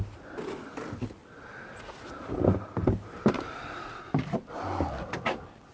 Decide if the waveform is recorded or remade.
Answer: recorded